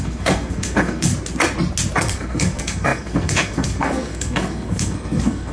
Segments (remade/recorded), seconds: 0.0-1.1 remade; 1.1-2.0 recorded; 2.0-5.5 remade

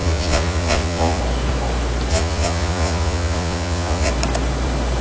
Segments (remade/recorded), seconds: 0.0-1.2 remade; 1.2-2.1 recorded; 2.1-4.1 remade; 4.1-5.0 recorded

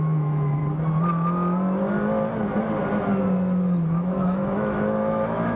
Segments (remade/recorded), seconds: 0.0-0.6 remade; 0.6-3.9 recorded; 3.9-5.6 remade

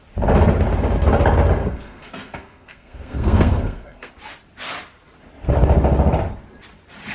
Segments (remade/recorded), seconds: 0.0-1.6 recorded; 1.6-4.1 remade; 4.1-7.1 recorded

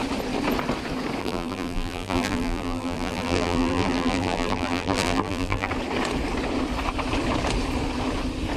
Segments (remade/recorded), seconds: 0.0-1.2 recorded; 1.2-5.7 remade; 5.7-8.6 recorded

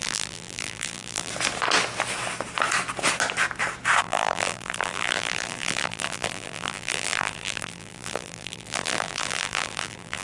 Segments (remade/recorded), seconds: 0.0-1.3 remade; 1.3-4.0 recorded; 4.0-10.2 remade

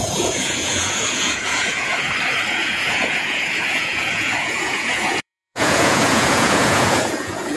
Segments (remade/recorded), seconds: 0.0-1.9 remade; 1.9-2.5 recorded; 2.5-7.6 remade